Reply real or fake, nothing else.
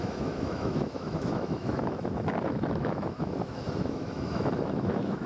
fake